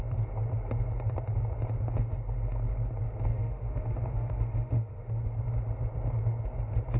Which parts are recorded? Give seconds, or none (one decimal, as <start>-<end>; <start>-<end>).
0.0-3.3; 5.2-7.0